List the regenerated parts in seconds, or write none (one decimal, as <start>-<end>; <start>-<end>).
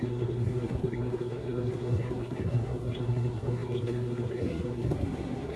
0.0-5.6